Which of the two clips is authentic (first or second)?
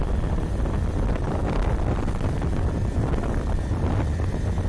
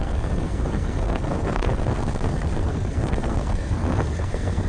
first